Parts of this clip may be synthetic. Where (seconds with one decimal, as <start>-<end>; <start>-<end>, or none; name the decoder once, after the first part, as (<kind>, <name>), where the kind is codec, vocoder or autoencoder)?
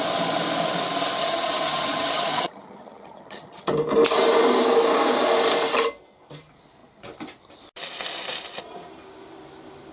1.2-3.7 (vocoder, HiFi-GAN)